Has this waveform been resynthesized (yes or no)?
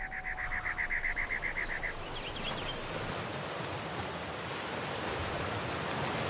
no